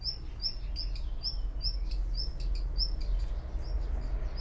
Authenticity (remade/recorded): recorded